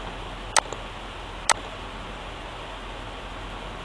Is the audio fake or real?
real